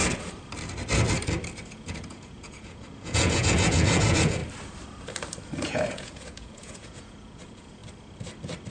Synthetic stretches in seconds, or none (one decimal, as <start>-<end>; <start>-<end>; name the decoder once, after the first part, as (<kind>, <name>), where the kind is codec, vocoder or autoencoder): 1.7-4.4 (vocoder, Vocos); 5.6-7.8